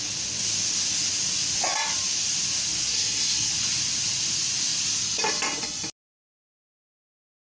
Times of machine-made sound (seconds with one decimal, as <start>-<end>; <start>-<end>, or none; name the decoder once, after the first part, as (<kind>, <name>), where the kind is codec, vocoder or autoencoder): 2.9-3.5 (codec, SNAC)